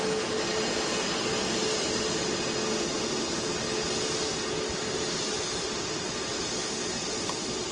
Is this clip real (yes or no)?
yes